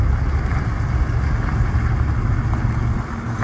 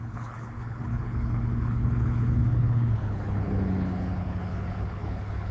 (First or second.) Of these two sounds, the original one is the first